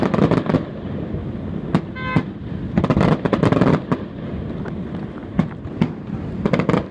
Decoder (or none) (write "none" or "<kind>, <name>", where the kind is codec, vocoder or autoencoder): none